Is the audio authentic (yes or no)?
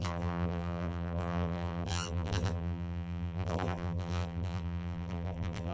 no